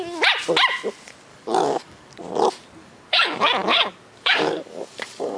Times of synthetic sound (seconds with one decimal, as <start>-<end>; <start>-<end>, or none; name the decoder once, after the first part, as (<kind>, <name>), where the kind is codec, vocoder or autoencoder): 1.3-2.1 (codec, DAC); 2.8-5.4